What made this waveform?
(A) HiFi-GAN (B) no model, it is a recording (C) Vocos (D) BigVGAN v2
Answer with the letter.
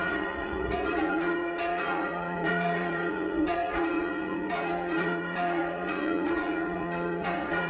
C